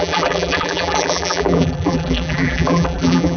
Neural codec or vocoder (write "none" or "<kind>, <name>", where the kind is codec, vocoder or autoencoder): vocoder, BigVGAN v2